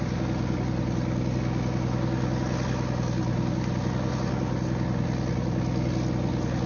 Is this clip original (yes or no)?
yes